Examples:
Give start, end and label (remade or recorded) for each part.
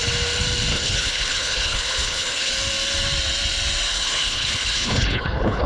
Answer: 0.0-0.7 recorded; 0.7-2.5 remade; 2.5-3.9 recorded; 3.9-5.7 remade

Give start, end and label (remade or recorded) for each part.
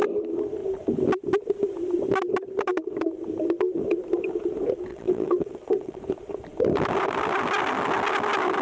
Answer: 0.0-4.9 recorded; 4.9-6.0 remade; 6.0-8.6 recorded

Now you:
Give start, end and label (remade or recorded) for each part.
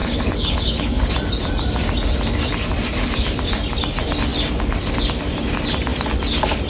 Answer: 0.0-1.1 remade; 1.1-6.7 recorded